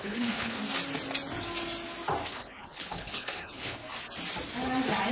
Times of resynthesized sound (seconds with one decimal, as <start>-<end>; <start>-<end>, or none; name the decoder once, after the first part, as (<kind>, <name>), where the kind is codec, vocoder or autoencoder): 0.0-0.6 (codec, HILCodec); 2.3-3.8